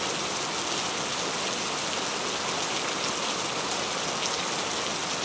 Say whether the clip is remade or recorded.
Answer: recorded